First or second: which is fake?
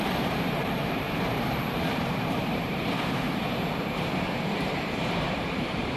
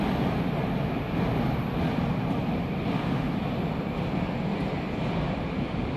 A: first